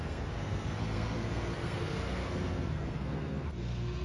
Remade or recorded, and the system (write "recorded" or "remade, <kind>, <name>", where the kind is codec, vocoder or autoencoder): remade, codec, SNAC